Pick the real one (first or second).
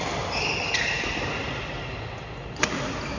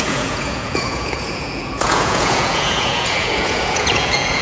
first